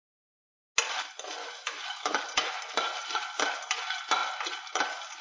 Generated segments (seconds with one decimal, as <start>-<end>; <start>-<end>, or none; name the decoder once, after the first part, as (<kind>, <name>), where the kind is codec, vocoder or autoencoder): 1.4-2.2 (autoencoder, DAC-VAE)